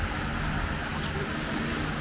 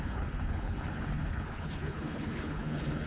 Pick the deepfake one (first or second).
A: second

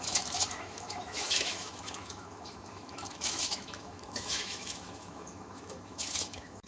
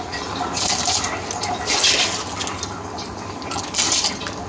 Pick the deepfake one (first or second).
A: first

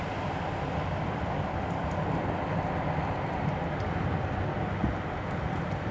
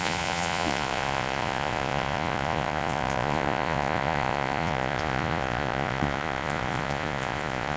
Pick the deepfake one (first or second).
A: second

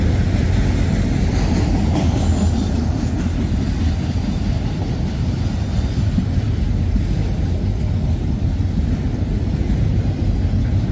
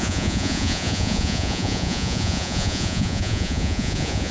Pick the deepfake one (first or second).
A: second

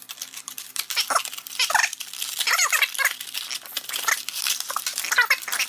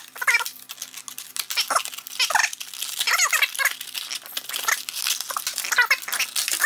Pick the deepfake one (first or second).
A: first